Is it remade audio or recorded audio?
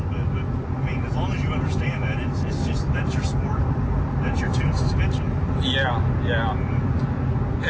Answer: recorded